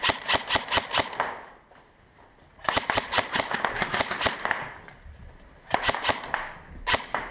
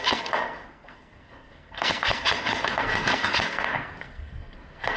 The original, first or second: first